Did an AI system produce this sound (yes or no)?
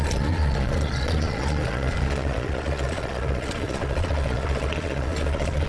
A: yes